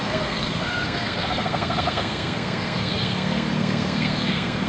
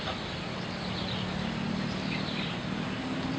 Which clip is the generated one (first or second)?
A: first